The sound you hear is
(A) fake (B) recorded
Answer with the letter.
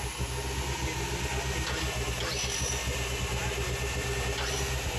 B